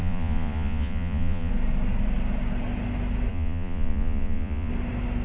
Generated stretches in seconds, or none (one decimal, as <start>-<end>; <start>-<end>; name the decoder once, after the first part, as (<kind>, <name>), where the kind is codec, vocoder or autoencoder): 0.0-1.5 (vocoder, Vocos); 3.3-4.7